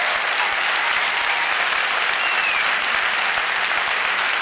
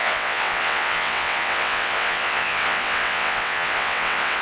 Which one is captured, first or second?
first